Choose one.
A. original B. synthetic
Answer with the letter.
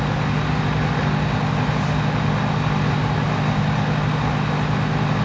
A